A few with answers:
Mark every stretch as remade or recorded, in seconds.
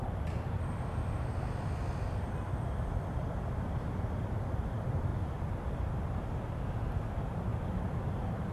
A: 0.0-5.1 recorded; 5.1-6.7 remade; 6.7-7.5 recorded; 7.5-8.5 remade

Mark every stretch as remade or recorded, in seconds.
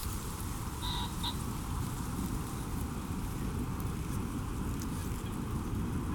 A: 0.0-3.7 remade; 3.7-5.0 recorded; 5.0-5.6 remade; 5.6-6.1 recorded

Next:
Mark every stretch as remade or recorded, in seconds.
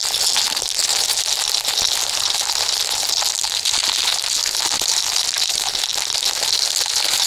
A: 0.0-7.3 recorded